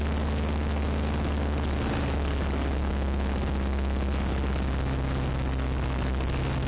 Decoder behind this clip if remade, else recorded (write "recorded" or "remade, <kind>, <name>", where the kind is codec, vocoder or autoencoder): recorded